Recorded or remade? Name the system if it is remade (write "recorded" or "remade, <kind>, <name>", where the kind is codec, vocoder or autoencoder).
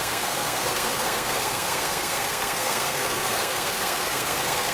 remade, codec, SNAC